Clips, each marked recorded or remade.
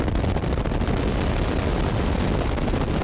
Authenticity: recorded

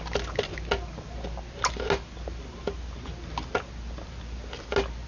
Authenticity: recorded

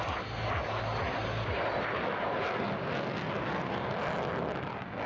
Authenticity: recorded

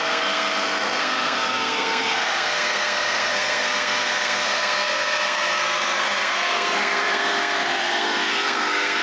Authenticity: remade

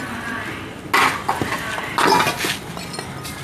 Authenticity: recorded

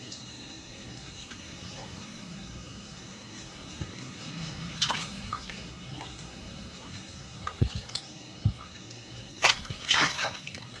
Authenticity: remade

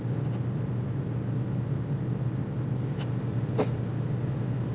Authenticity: recorded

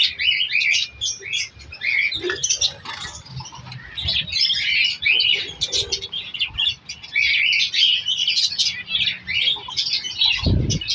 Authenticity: recorded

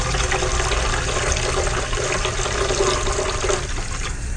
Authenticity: recorded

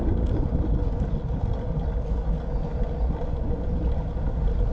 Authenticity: recorded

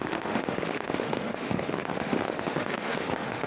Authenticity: remade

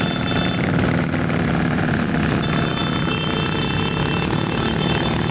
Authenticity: recorded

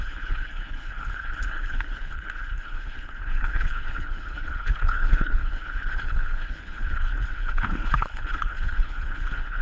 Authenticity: remade